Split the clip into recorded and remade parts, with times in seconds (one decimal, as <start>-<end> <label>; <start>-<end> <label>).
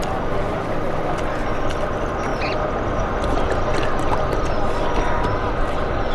0.0-6.1 recorded